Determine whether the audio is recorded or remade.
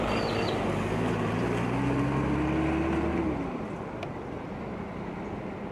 recorded